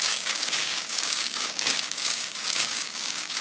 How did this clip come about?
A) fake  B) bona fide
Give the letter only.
A